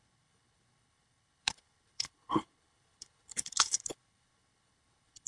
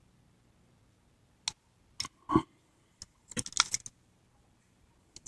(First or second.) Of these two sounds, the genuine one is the second